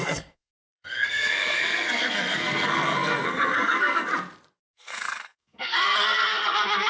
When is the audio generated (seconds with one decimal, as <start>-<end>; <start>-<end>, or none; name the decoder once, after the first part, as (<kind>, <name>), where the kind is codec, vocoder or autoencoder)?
0.0-4.1 (codec, SNAC); 4.6-6.9